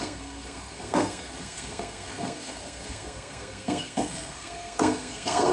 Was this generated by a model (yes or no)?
yes